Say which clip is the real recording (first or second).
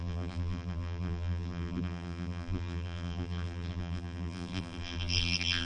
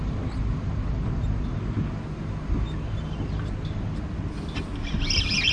second